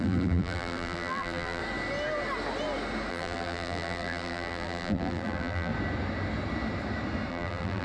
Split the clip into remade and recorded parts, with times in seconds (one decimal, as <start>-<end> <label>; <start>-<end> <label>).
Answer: 0.0-1.6 remade; 1.6-3.1 recorded; 3.1-5.7 remade; 5.7-7.3 recorded; 7.3-7.8 remade